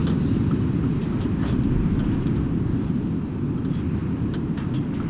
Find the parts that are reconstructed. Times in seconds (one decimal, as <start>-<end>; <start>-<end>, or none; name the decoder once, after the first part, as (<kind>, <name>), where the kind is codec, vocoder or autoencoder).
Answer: none